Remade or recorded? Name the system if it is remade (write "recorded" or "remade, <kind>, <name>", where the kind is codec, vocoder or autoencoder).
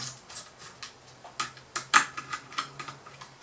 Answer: recorded